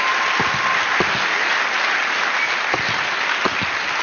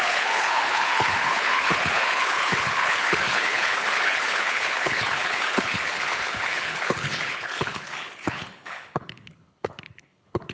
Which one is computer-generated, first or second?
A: second